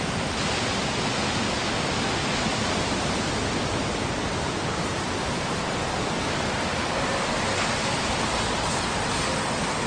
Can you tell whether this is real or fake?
real